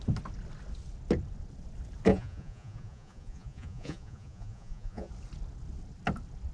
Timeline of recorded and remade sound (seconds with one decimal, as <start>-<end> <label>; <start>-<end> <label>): 0.0-2.1 recorded; 2.1-5.1 remade; 5.1-6.5 recorded